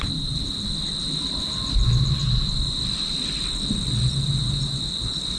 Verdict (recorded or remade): recorded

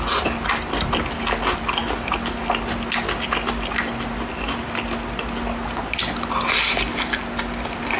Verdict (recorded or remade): recorded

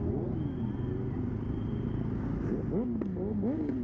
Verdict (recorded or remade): recorded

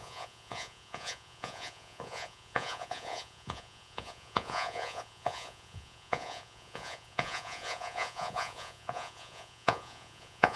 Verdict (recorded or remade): remade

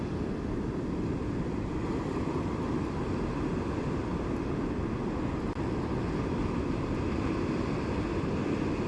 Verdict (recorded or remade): recorded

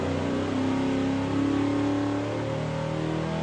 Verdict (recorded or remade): recorded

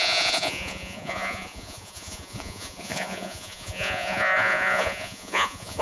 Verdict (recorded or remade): remade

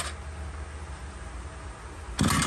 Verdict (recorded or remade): recorded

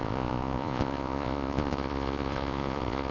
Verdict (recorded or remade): remade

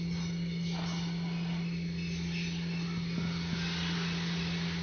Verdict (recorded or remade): recorded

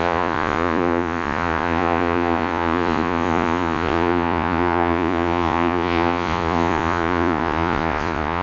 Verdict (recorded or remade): remade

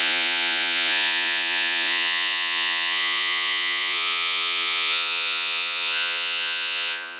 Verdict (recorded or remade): remade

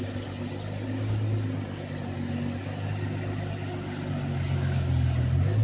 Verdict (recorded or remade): recorded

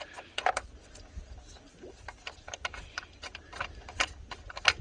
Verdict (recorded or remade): recorded